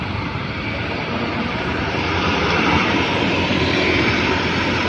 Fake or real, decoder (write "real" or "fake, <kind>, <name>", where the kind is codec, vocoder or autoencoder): fake, vocoder, BigVGAN v2